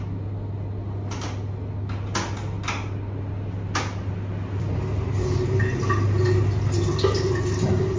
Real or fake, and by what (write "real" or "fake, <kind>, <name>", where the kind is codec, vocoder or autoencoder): real